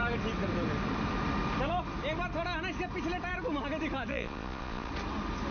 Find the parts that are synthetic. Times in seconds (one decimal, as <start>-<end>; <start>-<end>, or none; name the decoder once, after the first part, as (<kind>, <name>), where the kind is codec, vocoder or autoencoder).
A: 4.1-4.9 (vocoder, Vocos)